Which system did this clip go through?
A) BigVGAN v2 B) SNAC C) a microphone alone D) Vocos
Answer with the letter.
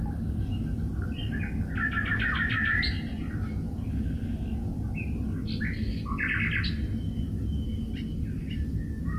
C